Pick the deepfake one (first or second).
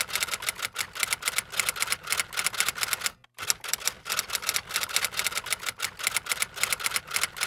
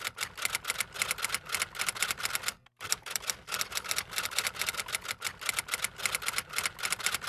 second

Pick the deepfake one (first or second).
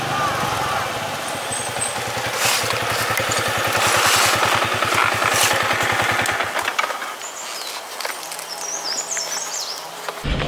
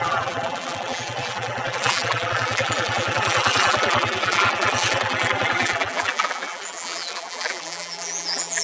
second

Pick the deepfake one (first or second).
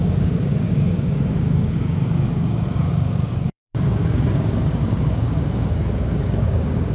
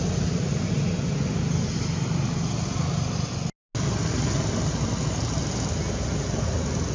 first